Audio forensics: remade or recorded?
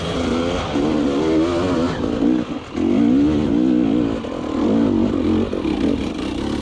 recorded